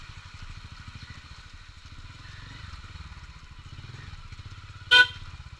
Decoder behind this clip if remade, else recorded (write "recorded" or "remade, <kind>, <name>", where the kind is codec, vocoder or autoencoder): recorded